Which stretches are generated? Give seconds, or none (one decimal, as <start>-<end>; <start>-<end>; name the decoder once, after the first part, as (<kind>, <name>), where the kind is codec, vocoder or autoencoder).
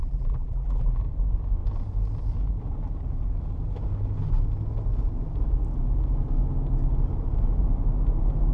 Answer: 0.0-1.0 (vocoder, BigVGAN v2)